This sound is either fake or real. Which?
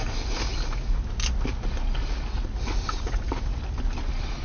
real